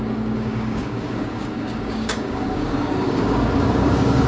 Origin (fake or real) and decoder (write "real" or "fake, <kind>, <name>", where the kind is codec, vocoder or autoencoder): fake, codec, DAC